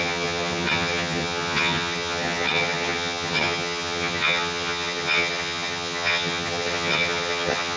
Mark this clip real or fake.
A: fake